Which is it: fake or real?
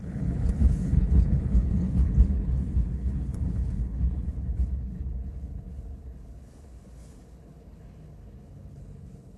fake